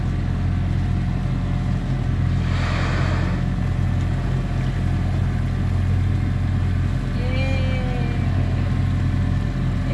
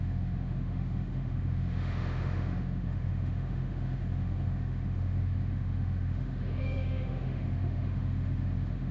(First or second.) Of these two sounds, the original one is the first